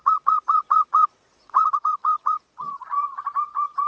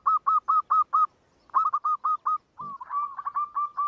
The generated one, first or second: first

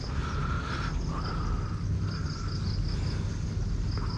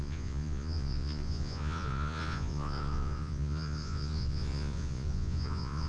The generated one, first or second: second